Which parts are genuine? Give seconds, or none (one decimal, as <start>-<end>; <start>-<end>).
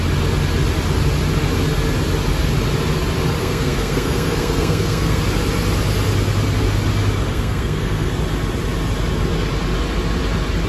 0.0-3.4; 5.2-7.3; 8.1-10.7